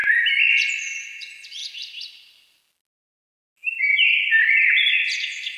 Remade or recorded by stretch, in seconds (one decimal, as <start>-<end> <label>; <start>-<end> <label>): 0.0-5.6 recorded